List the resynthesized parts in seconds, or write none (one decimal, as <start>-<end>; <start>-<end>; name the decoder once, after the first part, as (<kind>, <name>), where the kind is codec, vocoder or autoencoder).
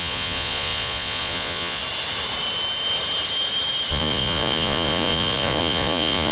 0.0-1.8 (vocoder, Vocos); 3.9-6.3